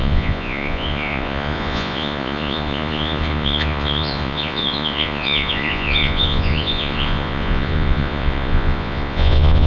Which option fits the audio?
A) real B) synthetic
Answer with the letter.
B